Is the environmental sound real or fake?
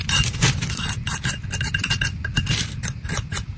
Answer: real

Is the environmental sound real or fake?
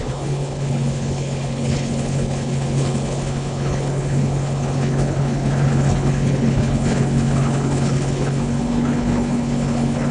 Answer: fake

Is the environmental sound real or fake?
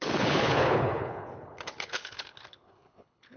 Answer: fake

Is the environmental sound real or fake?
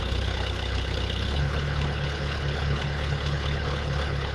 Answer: fake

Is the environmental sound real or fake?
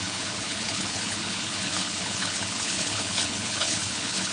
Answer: fake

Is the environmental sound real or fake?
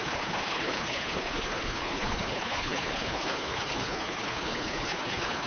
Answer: fake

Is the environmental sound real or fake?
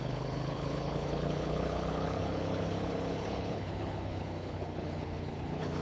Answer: fake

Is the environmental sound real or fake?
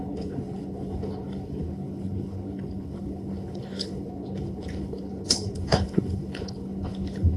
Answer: fake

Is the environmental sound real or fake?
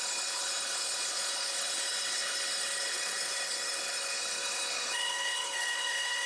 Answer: fake